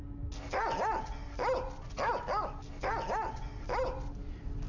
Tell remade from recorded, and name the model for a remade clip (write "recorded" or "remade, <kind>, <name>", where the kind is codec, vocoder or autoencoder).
recorded